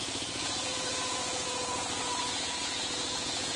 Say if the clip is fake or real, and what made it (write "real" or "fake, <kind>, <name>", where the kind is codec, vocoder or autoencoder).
fake, vocoder, Vocos